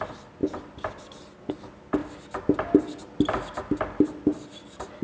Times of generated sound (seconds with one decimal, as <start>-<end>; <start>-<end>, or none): 0.4-0.9